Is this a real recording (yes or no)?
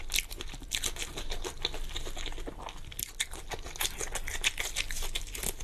yes